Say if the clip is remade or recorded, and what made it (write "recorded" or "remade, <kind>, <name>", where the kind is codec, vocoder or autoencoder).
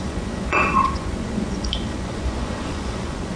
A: remade, vocoder, Vocos